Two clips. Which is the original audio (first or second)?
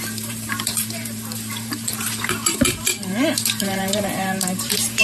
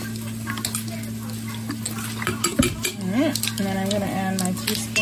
second